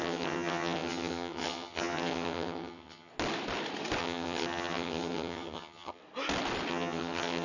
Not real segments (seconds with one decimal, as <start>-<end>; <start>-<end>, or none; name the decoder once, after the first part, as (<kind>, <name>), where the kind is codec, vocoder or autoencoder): 0.0-3.1 (vocoder, HiFi-GAN); 4.0-6.0; 6.7-7.4